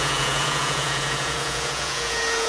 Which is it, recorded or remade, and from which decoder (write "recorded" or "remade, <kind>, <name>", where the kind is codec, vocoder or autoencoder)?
remade, vocoder, Vocos